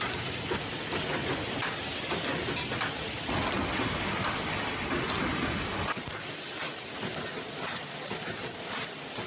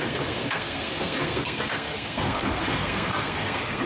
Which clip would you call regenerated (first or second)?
second